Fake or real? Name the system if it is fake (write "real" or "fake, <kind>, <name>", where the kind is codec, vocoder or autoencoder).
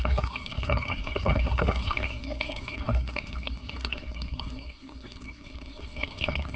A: fake, codec, SNAC